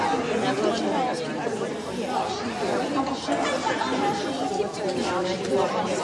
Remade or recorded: recorded